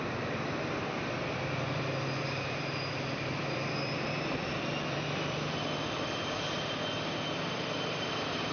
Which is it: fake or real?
fake